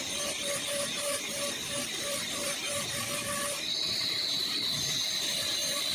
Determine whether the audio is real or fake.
fake